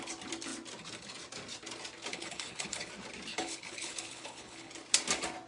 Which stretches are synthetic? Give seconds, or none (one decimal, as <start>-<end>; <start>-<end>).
2.1-2.9; 3.3-4.7